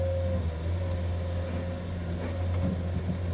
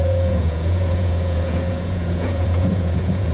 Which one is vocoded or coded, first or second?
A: second